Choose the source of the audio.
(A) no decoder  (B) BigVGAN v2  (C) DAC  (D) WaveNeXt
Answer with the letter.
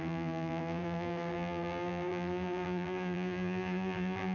B